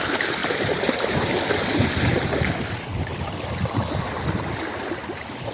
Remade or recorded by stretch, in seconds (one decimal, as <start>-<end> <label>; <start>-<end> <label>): 0.0-0.4 recorded; 0.4-3.7 remade; 3.7-5.5 recorded